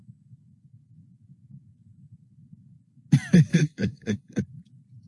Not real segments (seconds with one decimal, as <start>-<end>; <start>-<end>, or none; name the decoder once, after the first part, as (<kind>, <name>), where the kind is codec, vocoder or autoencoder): 3.5-4.4 (codec, SNAC)